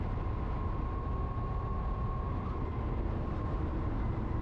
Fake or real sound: real